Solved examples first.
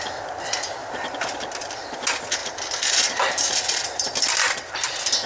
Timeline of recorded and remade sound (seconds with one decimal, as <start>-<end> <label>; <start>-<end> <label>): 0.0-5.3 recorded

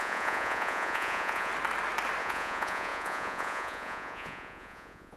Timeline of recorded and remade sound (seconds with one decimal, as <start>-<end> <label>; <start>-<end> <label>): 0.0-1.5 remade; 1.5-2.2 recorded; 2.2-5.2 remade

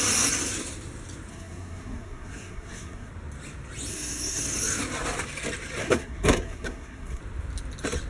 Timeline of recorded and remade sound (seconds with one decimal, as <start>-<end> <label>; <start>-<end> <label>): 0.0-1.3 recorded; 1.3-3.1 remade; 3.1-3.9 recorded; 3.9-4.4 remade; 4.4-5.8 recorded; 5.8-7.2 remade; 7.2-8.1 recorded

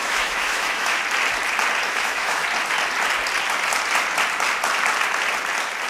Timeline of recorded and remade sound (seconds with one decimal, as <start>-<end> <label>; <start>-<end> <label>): 0.0-1.0 remade; 1.0-1.9 recorded; 1.9-2.4 remade; 2.4-5.9 recorded

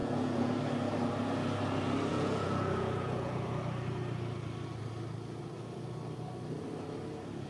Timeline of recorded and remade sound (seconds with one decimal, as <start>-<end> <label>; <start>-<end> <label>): 0.0-0.5 remade; 0.5-2.1 recorded; 2.1-3.5 remade; 3.5-7.5 recorded